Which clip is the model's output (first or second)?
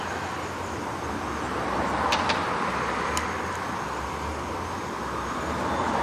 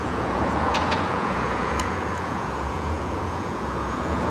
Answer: second